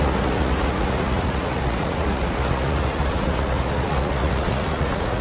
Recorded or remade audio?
remade